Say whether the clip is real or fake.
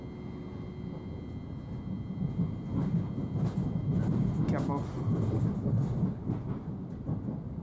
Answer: real